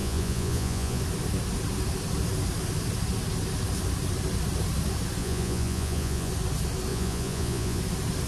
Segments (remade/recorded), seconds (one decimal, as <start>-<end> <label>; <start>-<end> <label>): 0.0-1.0 remade; 1.0-5.2 recorded; 5.2-6.3 remade; 6.3-6.9 recorded; 6.9-7.8 remade; 7.8-8.3 recorded